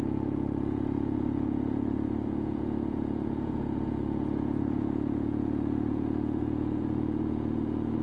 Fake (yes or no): yes